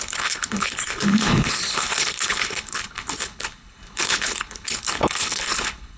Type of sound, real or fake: fake